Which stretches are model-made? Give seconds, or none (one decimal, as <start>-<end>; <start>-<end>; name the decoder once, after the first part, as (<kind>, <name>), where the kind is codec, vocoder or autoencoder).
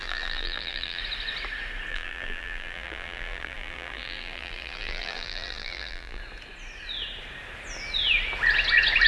0.0-1.0 (vocoder, BigVGAN v2); 1.9-6.2